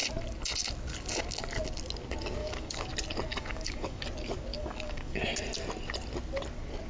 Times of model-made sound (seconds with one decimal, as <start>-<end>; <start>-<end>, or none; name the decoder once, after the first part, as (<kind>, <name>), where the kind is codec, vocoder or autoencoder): 2.4-2.9 (codec, DAC); 3.3-4.0; 4.5-5.2